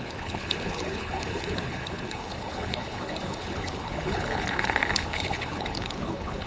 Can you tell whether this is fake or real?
fake